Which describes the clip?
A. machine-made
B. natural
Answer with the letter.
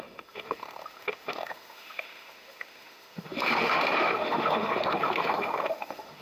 A